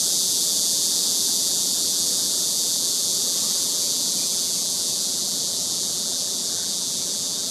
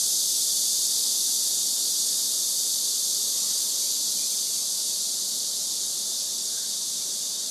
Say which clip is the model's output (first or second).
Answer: first